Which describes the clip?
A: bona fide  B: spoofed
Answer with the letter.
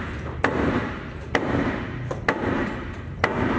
B